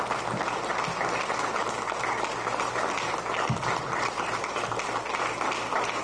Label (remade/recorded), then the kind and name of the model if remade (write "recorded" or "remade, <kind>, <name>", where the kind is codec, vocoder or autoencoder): recorded